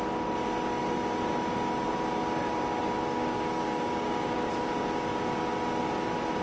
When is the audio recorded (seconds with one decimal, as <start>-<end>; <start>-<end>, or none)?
0.0-2.8; 4.5-6.4